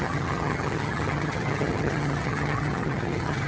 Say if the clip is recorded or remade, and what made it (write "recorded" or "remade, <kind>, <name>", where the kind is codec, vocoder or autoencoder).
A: remade, vocoder, HiFi-GAN